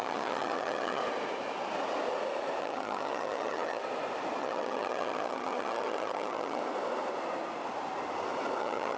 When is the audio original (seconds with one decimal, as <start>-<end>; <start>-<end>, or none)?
1.0-2.6; 3.8-4.4; 6.6-8.6